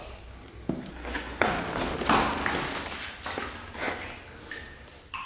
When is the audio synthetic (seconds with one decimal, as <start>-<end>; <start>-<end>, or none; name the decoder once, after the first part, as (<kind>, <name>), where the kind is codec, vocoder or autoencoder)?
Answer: 0.9-1.5 (codec, SNAC)